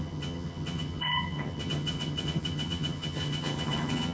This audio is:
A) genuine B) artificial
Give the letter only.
B